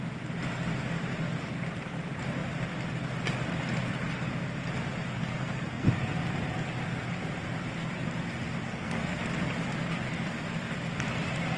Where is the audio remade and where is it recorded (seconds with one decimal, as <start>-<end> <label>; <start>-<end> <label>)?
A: 0.0-5.2 recorded; 5.2-5.9 remade; 5.9-8.6 recorded; 8.6-9.2 remade; 9.2-11.6 recorded